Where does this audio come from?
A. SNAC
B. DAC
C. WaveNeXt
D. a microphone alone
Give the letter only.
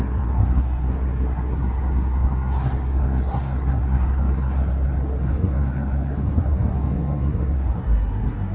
A